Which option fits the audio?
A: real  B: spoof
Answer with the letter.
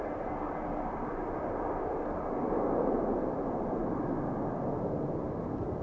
A